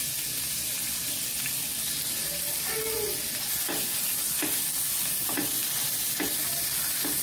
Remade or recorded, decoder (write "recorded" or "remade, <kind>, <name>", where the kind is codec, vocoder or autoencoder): recorded